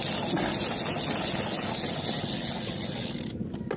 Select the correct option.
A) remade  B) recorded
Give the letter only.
B